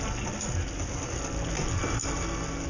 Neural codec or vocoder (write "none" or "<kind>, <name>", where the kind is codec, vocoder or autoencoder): none